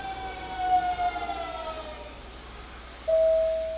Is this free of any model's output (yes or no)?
yes